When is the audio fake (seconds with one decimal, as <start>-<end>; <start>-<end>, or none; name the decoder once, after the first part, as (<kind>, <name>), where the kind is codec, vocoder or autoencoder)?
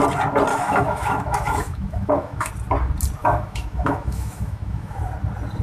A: 0.5-2.5 (autoencoder, DAC-VAE); 3.2-5.0